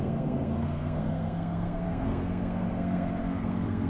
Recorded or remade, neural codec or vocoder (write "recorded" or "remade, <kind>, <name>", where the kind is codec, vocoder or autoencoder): remade, codec, SNAC